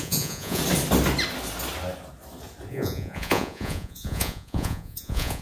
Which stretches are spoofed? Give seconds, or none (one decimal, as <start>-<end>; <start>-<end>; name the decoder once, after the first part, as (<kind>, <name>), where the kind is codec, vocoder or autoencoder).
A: 0.0-0.6 (vocoder, Vocos); 2.7-5.4

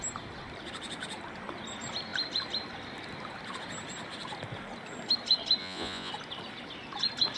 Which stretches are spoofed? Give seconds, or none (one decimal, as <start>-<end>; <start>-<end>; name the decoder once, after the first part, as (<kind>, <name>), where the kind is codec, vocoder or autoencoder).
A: 5.6-6.1 (vocoder, Vocos)

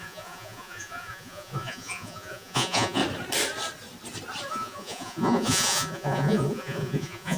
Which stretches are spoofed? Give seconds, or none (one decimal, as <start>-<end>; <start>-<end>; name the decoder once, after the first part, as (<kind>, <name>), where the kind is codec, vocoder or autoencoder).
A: 0.0-3.0 (vocoder, Vocos); 4.5-7.4

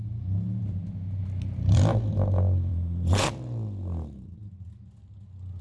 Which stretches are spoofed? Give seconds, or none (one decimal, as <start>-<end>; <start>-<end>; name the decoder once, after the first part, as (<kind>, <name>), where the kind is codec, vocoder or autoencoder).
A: 2.7-3.3 (vocoder, Vocos)

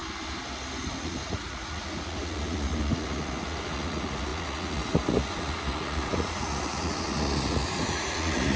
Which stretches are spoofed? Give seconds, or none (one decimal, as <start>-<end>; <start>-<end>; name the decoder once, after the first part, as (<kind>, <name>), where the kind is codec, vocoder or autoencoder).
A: 1.0-8.6 (vocoder, Vocos)

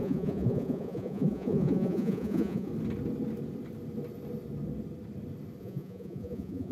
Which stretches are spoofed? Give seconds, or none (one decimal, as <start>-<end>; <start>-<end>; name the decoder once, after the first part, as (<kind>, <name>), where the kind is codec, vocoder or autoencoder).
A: 0.0-2.7 (vocoder, Vocos); 5.6-6.7

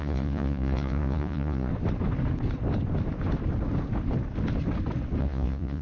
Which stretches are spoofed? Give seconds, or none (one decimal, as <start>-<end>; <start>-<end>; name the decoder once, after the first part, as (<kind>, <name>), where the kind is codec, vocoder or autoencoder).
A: 0.0-1.7 (vocoder, Vocos); 5.2-5.8